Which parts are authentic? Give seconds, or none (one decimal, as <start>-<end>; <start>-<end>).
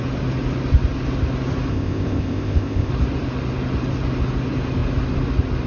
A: 0.0-1.7; 2.9-5.7